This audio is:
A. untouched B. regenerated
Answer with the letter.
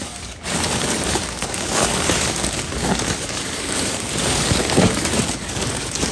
B